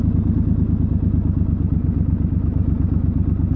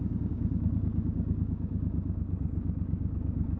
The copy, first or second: second